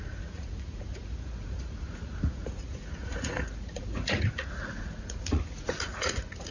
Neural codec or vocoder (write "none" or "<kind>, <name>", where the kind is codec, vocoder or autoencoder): vocoder, Vocos